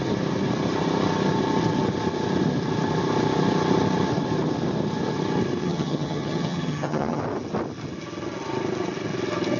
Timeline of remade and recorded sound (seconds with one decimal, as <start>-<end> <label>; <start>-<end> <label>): 0.0-5.6 recorded; 5.6-7.2 remade; 7.2-9.6 recorded